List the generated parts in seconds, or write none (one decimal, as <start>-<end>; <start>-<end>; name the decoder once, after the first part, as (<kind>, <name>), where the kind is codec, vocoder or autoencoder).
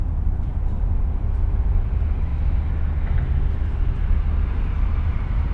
0.0-2.3 (vocoder, BigVGAN v2); 4.5-5.5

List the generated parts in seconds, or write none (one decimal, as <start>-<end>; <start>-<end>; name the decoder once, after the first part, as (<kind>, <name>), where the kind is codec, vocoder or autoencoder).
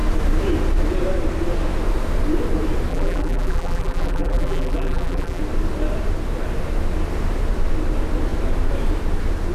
2.9-5.4 (vocoder, BigVGAN v2)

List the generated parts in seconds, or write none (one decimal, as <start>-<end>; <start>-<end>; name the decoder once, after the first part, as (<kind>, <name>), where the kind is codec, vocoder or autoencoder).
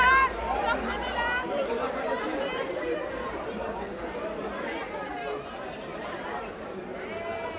0.0-2.7 (vocoder, BigVGAN v2); 5.9-6.8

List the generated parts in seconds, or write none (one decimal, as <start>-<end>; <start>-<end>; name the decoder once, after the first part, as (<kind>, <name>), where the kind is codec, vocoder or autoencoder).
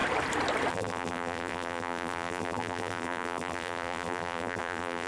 0.7-5.1 (vocoder, BigVGAN v2)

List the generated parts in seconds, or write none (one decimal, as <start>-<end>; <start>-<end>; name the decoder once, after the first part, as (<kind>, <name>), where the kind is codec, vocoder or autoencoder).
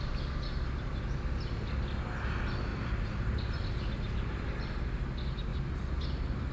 2.7-4.7 (vocoder, BigVGAN v2); 5.5-6.5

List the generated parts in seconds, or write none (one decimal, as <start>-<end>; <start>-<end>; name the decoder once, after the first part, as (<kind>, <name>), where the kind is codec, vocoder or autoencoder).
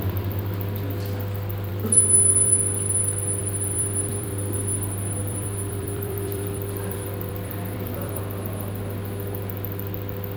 1.7-2.5 (vocoder, BigVGAN v2); 3.4-8.2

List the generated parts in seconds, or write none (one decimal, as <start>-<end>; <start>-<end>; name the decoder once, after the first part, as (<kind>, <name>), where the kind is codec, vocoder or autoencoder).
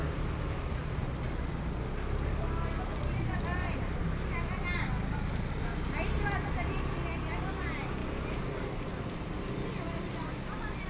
8.0-8.6 (vocoder, BigVGAN v2)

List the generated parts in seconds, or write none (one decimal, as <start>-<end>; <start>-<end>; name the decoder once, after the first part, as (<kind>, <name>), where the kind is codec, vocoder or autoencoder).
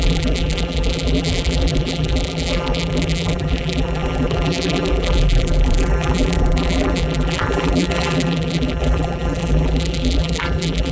0.0-10.9 (vocoder, BigVGAN v2)